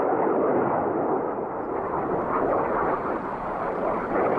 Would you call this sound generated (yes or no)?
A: no